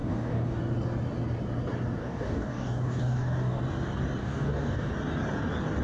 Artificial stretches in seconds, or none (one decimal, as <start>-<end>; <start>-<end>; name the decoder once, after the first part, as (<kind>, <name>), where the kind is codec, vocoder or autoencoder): 0.0-0.6 (codec, DAC); 2.0-3.6; 4.2-4.9